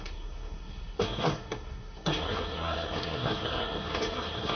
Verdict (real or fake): fake